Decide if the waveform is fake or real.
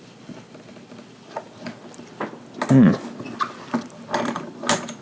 real